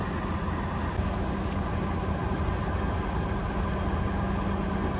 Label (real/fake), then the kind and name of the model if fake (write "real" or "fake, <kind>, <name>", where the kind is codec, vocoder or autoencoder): real